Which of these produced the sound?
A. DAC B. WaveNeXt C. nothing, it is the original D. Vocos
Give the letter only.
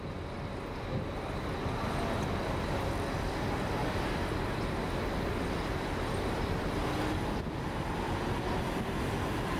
C